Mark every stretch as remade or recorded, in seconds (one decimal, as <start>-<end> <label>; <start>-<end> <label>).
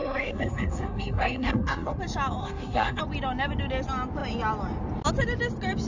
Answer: 0.0-2.0 remade; 2.0-2.4 recorded; 2.4-3.0 remade; 3.0-5.9 recorded